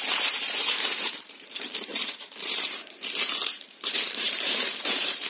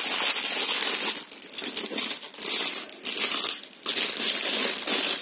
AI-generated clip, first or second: first